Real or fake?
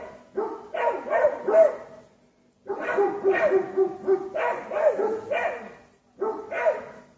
real